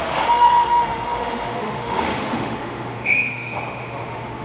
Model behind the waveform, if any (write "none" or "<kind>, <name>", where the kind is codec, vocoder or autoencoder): autoencoder, DAC-VAE